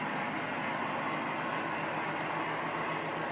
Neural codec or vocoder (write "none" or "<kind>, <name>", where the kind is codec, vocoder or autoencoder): none